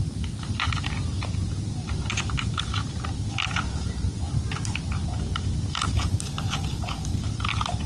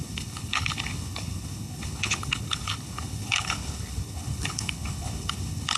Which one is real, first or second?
first